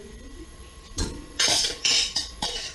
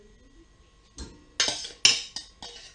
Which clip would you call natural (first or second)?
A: second